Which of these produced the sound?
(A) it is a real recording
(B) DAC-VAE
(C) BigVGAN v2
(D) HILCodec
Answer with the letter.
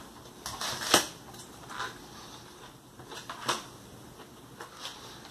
A